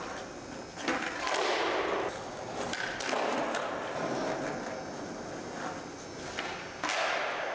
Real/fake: real